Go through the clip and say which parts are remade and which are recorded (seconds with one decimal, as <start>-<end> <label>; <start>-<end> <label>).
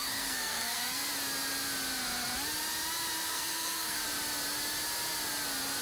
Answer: 0.0-1.0 remade; 1.0-3.3 recorded; 3.3-4.0 remade; 4.0-5.8 recorded